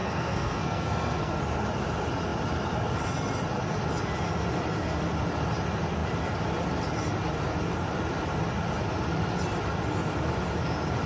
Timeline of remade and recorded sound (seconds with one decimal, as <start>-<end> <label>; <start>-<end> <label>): 0.0-1.4 remade; 1.4-11.1 recorded